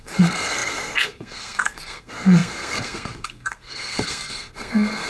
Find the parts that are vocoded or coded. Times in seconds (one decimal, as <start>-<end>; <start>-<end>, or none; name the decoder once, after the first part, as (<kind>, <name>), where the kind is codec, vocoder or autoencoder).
0.0-5.1 (codec, SNAC)

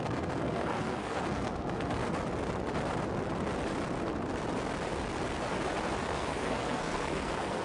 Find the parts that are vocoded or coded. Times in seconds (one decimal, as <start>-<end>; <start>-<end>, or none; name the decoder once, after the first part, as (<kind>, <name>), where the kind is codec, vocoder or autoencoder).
0.0-2.0 (codec, SNAC); 6.0-7.6